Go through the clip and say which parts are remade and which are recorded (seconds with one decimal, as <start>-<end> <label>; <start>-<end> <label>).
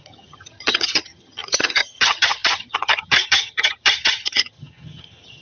0.0-5.4 remade